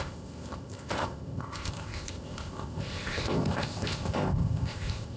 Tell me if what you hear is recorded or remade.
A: remade